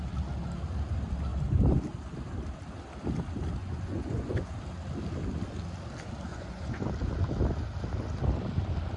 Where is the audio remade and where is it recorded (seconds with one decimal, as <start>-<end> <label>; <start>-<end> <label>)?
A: 0.0-3.6 recorded; 3.6-4.5 remade; 4.5-6.3 recorded; 6.3-6.9 remade; 6.9-9.0 recorded